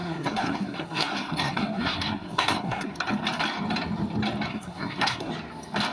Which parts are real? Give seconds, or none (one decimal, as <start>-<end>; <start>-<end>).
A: 2.9-4.5; 5.3-5.9